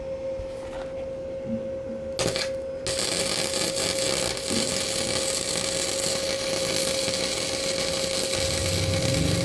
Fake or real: real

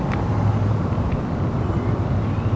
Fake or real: real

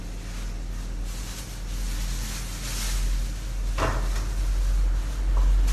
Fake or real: real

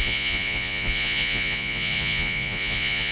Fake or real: fake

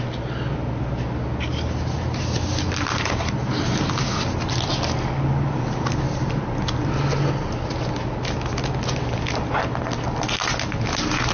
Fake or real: real